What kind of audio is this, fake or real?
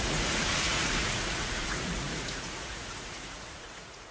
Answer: fake